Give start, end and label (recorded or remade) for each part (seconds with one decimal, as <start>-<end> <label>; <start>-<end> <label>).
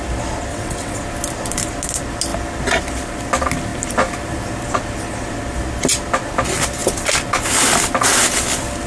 0.0-0.5 recorded; 0.5-1.0 remade; 1.0-8.9 recorded